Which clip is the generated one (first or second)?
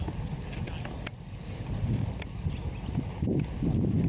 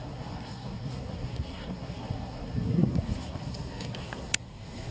second